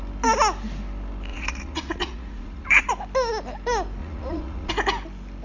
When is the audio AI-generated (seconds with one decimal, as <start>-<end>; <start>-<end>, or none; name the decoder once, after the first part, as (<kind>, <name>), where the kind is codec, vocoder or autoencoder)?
1.3-2.9 (vocoder, Vocos); 4.0-4.7

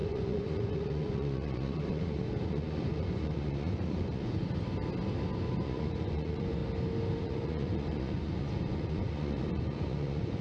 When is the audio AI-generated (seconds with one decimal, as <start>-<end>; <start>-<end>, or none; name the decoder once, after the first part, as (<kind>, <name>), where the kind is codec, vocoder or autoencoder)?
0.0-4.4 (vocoder, Vocos); 5.6-6.6; 7.2-10.4